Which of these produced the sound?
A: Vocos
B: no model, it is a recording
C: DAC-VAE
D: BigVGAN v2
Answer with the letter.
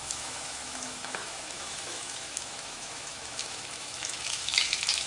C